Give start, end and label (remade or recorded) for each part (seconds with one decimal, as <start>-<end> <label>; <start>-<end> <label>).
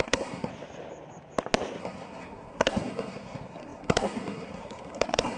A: 0.0-0.5 remade; 0.5-1.8 recorded; 1.8-5.4 remade